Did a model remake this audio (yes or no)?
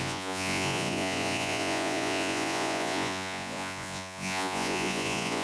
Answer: yes